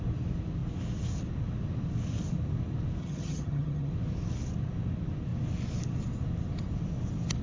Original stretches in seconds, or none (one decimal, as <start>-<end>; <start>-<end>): 0.0-3.0; 3.9-7.4